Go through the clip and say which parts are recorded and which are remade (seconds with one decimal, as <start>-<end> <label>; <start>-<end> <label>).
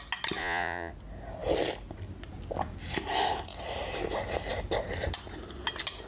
0.0-0.4 recorded; 0.4-0.9 remade; 0.9-6.1 recorded